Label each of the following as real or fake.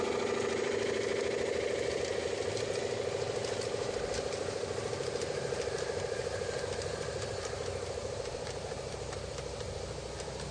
fake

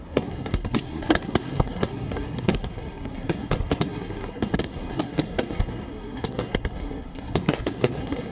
fake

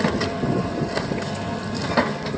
real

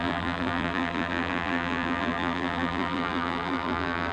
fake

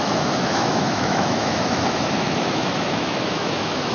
fake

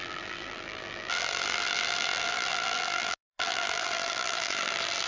fake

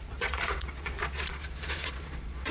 fake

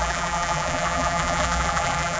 fake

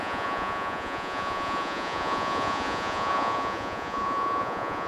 fake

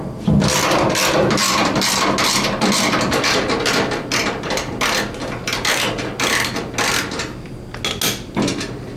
real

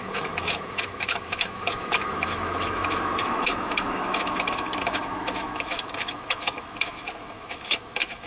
fake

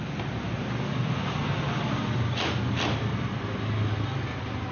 real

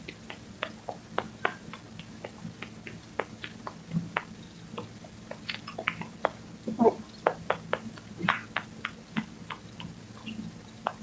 real